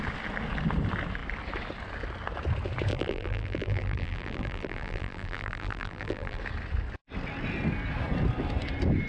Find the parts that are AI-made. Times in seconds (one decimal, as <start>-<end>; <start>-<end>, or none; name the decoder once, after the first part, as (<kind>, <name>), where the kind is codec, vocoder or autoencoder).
2.9-6.4 (vocoder, BigVGAN v2)